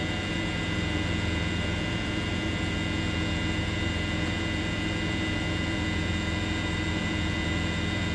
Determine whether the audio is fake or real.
fake